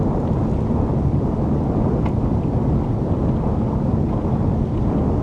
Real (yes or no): yes